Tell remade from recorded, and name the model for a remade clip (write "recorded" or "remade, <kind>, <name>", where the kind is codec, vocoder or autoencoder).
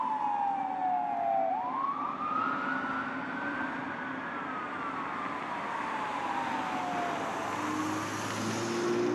recorded